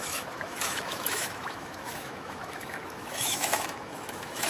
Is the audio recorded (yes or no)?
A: no